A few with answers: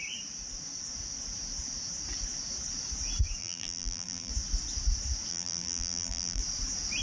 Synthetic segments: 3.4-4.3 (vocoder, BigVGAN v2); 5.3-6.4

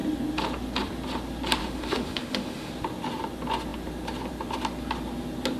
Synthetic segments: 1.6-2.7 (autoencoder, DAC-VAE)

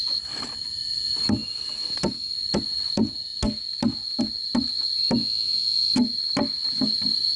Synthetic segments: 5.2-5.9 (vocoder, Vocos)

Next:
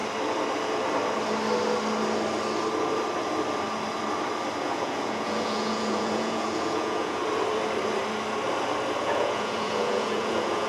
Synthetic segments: 4.6-7.2 (vocoder, Vocos); 9.0-10.7

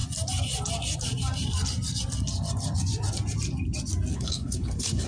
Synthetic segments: 4.1-5.1 (codec, HILCodec)

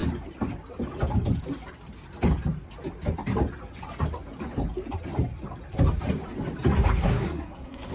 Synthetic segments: 7.0-7.9 (codec, SNAC)